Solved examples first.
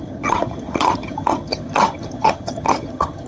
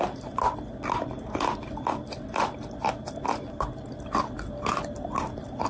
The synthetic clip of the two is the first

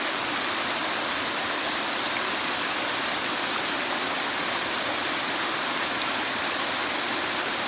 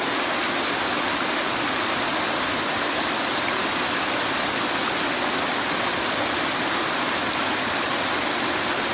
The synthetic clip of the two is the first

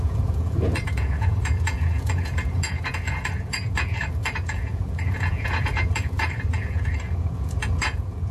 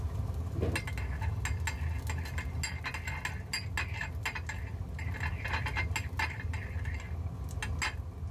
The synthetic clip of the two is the first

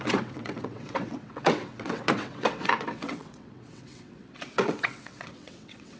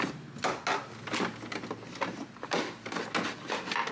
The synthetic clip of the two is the first